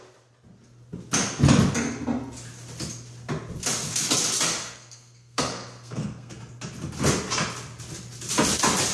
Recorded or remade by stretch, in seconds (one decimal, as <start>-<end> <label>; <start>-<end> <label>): 0.0-4.6 recorded; 4.6-6.4 remade; 6.4-8.9 recorded